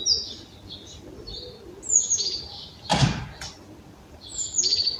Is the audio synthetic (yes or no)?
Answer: no